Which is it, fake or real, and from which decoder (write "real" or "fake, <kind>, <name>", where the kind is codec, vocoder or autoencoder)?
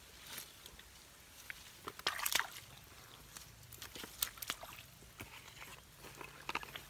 real